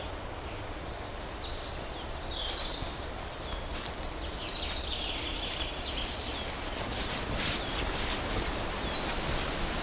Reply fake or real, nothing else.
real